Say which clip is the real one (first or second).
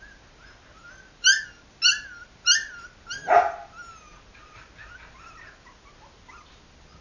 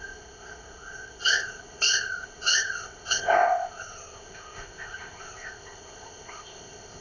first